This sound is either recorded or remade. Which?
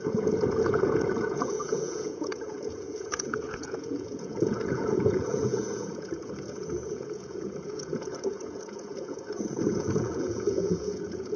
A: remade